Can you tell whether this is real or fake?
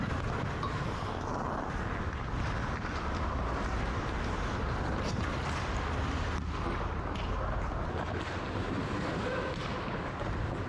real